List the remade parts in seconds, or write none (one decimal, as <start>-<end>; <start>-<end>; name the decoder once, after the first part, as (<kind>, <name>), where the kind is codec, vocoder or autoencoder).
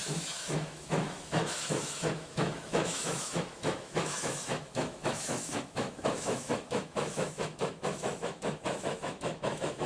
0.0-9.9 (autoencoder, DAC-VAE)